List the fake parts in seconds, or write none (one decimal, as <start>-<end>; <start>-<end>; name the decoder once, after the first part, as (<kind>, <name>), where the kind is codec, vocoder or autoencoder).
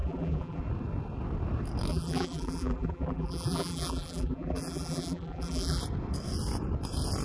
0.0-0.6 (vocoder, BigVGAN v2); 1.9-5.8